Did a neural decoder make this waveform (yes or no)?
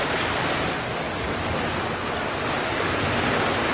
no